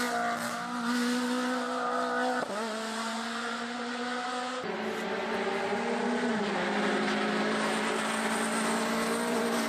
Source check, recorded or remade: recorded